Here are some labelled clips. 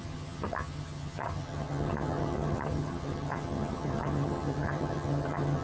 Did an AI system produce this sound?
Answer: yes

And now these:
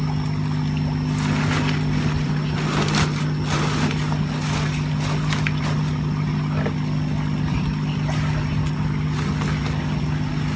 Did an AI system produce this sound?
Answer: no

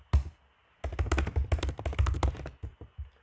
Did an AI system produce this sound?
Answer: no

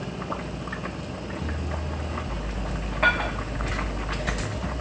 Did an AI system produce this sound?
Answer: no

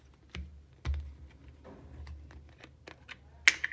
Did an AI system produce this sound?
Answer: no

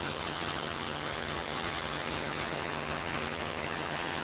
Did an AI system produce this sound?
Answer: yes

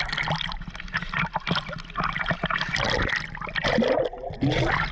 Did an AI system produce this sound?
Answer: no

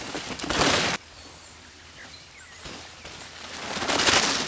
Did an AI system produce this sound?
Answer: no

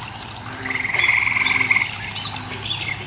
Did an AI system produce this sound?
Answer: no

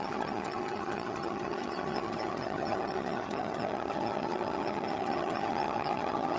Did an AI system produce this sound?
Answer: yes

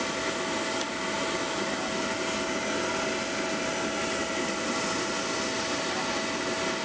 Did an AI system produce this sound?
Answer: no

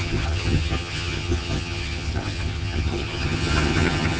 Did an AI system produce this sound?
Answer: yes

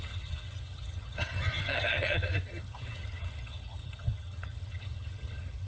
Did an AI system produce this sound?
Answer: yes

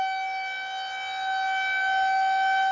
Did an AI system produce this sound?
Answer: no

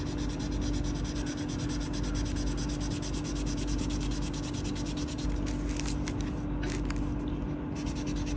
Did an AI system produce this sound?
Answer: no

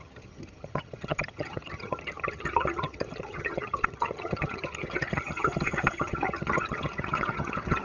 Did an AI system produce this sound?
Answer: yes